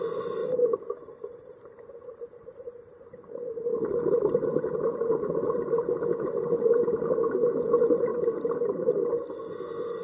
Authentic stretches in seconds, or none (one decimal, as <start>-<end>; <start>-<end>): 0.0-0.4; 3.7-10.0